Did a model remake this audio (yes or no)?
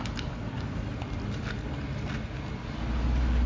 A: no